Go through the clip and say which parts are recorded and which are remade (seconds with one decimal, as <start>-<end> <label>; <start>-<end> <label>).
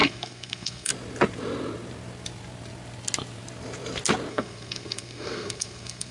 0.0-0.9 remade; 0.9-4.3 recorded; 4.3-6.1 remade